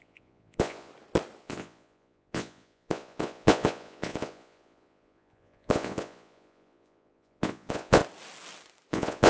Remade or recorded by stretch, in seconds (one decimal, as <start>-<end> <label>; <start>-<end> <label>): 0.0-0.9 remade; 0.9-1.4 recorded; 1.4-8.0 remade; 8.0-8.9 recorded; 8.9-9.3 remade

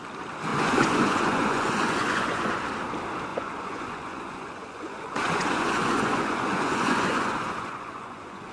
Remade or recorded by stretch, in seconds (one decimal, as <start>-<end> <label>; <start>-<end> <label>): 0.0-0.5 recorded; 0.5-2.6 remade; 2.6-3.3 recorded; 3.3-8.5 remade

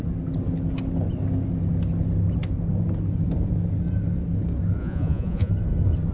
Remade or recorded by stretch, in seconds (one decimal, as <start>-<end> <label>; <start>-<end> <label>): 0.0-4.8 recorded; 4.8-5.5 remade; 5.5-6.1 recorded

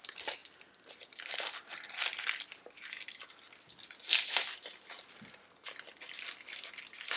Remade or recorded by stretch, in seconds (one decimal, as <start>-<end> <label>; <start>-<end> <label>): 0.0-7.2 recorded

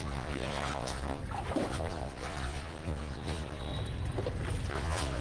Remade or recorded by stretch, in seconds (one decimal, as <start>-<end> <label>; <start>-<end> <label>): 0.0-1.2 remade; 1.2-1.7 recorded; 1.7-3.7 remade; 3.7-4.7 recorded; 4.7-5.2 remade

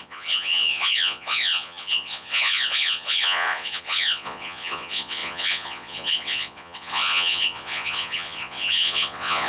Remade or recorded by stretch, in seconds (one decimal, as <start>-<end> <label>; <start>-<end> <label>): 0.0-9.5 remade

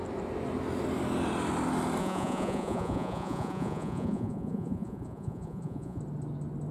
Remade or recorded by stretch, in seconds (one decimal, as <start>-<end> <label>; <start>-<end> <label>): 0.0-2.0 recorded; 2.0-6.0 remade; 6.0-6.7 recorded

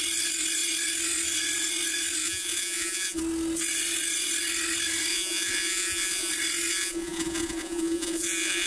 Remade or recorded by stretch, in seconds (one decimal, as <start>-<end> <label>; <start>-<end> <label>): 0.0-2.2 recorded; 2.2-3.2 remade; 3.2-5.1 recorded; 5.1-6.3 remade; 6.3-6.7 recorded; 6.7-8.7 remade